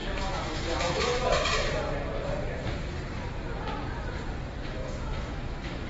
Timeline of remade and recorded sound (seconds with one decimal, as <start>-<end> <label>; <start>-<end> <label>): 0.0-1.1 remade; 1.1-4.6 recorded; 4.6-5.9 remade